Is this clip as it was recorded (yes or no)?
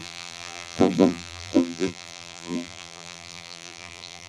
no